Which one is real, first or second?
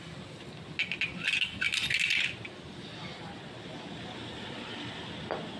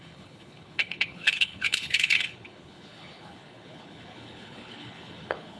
first